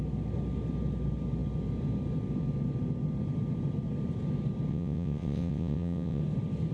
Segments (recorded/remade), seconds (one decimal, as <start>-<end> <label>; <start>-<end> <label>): 0.0-4.7 recorded; 4.7-6.2 remade; 6.2-6.7 recorded